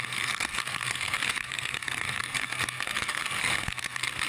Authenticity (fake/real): fake